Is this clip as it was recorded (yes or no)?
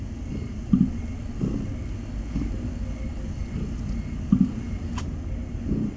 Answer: yes